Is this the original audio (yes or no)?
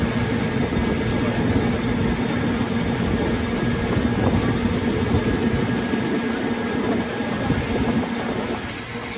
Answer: yes